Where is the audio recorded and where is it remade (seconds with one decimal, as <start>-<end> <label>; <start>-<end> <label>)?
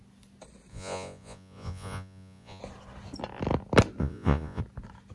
0.0-0.7 recorded; 0.7-2.6 remade; 2.6-4.0 recorded; 4.0-4.6 remade; 4.6-5.1 recorded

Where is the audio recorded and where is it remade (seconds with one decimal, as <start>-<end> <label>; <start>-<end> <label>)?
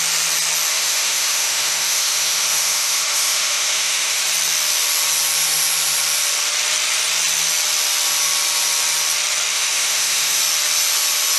0.0-0.7 recorded; 0.7-4.2 remade; 4.2-9.5 recorded; 9.5-10.4 remade; 10.4-11.4 recorded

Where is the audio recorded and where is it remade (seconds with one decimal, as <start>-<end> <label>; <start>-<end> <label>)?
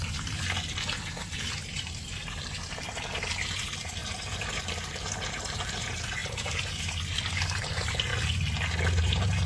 0.0-8.1 remade; 8.1-9.0 recorded; 9.0-9.5 remade